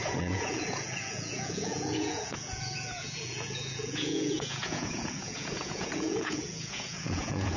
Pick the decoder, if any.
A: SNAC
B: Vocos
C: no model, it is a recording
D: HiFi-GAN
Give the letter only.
B